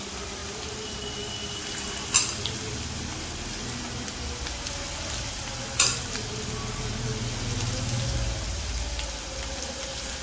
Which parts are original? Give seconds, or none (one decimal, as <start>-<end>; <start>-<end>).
0.0-10.2